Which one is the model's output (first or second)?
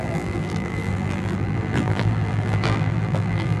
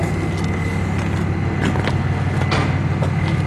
first